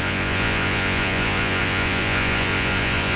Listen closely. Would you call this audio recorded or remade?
remade